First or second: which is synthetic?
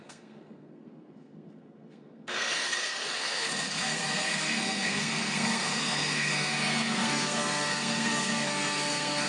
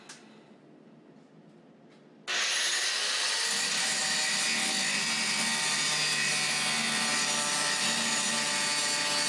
first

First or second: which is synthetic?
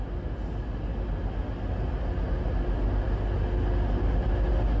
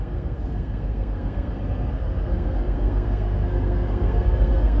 second